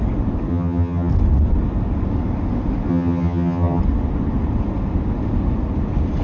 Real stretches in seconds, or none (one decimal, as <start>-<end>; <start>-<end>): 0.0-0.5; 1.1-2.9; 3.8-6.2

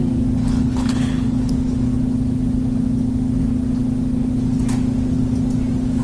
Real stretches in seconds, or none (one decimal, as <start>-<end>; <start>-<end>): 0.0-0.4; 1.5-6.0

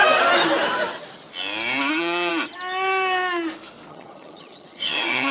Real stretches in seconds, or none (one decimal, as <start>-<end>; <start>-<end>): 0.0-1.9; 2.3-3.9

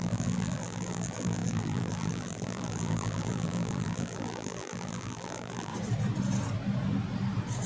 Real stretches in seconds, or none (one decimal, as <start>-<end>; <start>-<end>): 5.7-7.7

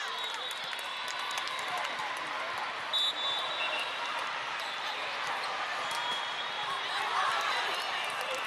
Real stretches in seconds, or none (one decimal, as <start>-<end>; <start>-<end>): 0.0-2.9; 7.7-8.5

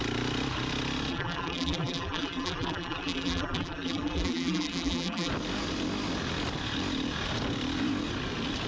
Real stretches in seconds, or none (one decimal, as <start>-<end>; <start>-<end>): 0.0-1.1; 5.3-8.7

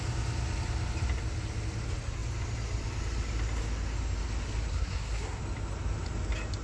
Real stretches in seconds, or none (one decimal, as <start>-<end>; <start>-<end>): 0.0-4.7; 5.4-6.6

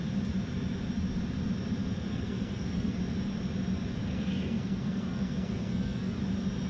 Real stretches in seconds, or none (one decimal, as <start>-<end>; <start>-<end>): 0.0-1.8; 3.0-4.0; 6.2-6.7